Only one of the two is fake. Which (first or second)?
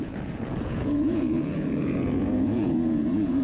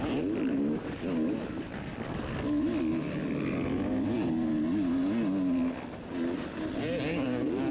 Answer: first